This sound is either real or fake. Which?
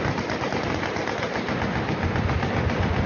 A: real